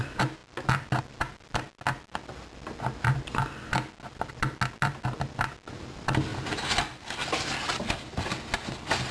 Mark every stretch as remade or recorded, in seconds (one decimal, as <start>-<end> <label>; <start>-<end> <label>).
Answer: 0.0-9.1 recorded